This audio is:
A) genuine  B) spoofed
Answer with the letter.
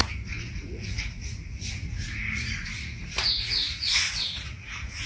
B